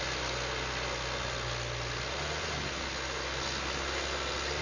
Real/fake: real